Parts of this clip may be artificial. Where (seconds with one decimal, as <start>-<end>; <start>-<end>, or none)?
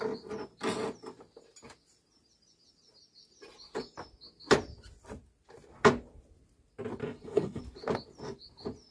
7.0-7.6